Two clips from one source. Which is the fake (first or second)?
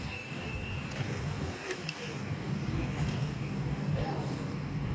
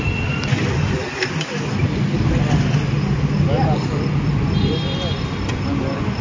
first